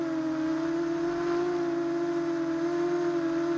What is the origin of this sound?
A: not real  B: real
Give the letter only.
B